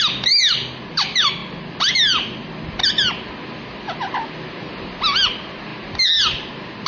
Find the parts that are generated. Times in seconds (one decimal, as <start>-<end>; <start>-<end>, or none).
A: none